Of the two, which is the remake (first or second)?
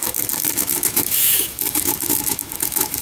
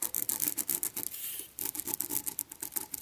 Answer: first